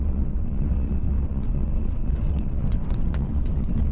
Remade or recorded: remade